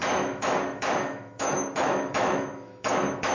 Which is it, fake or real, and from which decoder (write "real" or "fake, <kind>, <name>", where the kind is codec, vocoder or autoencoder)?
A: fake, autoencoder, DAC-VAE